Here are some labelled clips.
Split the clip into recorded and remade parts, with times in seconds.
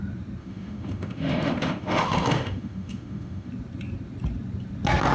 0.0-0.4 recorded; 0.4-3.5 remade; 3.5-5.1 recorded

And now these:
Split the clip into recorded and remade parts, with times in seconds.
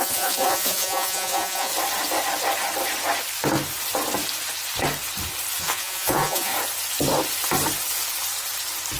0.0-1.7 remade; 1.7-5.6 recorded; 5.6-6.5 remade; 6.5-9.0 recorded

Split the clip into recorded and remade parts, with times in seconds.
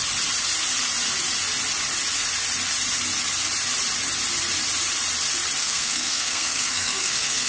0.0-5.6 recorded; 5.6-7.5 remade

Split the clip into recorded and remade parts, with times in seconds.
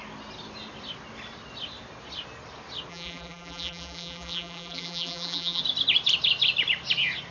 0.0-2.9 recorded; 2.9-5.6 remade; 5.6-7.3 recorded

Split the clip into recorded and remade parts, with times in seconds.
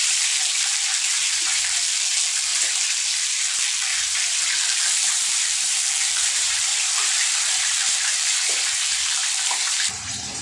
0.0-3.9 remade; 3.9-4.6 recorded; 4.6-10.4 remade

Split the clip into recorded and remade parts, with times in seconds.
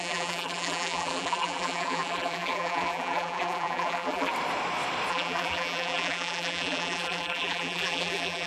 0.0-4.3 remade; 4.3-5.1 recorded; 5.1-8.5 remade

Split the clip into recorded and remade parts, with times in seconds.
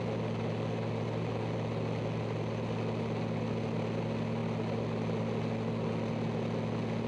0.0-7.1 recorded